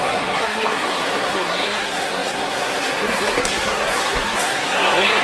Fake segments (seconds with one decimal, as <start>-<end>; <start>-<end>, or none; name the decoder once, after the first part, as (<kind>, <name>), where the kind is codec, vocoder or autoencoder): 0.0-5.2 (codec, SNAC)